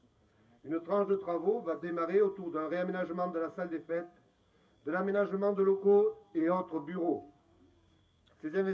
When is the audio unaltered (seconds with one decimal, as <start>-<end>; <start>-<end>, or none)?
1.9-3.9